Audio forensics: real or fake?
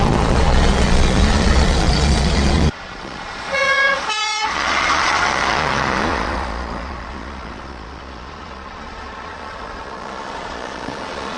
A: fake